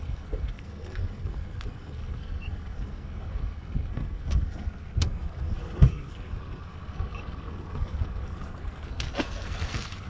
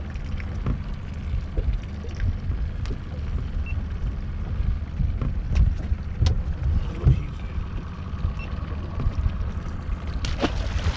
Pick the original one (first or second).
second